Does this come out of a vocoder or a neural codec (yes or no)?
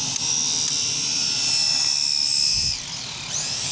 no